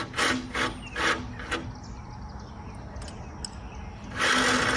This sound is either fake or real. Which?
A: real